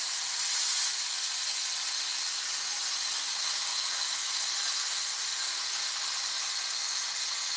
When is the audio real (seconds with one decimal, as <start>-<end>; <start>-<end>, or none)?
0.0-3.7; 4.3-7.6